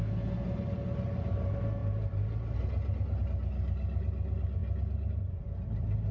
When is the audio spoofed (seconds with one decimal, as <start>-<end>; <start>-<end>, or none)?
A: none

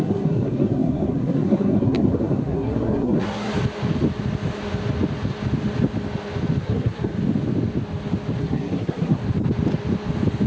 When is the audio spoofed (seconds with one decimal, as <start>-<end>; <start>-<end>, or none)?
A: 0.0-3.5; 6.6-7.1; 8.4-9.2

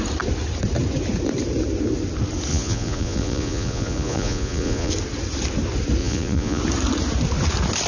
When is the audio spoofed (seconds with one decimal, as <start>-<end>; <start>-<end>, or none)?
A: 2.5-4.9; 6.0-6.6

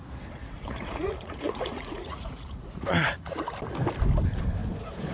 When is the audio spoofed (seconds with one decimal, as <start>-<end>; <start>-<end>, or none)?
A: 0.4-3.5

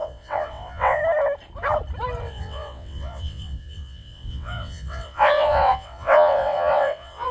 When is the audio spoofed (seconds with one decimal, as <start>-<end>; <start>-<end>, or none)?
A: 0.0-1.0; 2.2-7.3

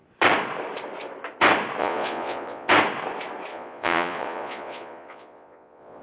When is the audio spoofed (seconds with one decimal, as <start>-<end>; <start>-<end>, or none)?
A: 1.8-2.7; 3.5-6.0

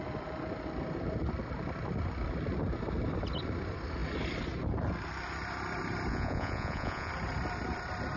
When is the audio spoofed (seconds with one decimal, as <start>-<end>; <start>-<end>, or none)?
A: 6.1-7.1

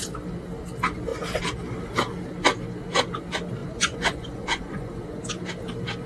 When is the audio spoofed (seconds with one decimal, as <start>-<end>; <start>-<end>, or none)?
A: 3.6-5.2